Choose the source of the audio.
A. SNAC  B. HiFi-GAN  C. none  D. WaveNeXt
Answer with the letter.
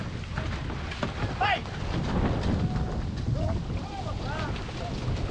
C